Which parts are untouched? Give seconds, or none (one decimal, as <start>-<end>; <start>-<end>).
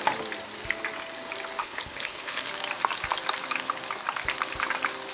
0.0-1.6; 2.5-5.1